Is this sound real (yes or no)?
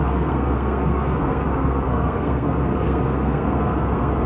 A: no